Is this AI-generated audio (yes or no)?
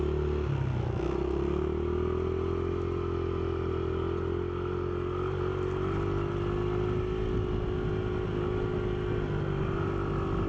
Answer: no